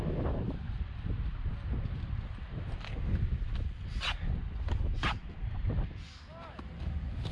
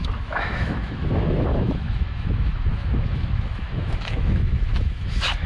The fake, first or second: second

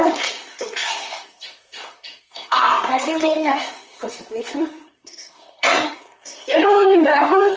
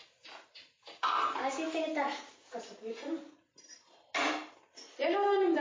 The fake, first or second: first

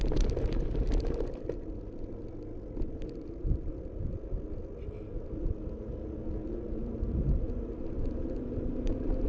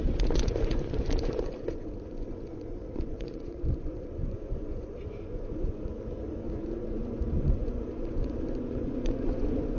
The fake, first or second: second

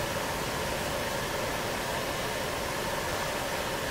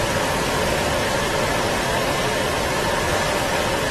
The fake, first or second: first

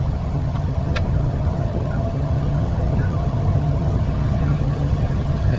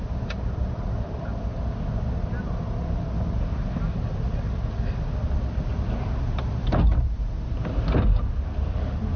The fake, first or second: first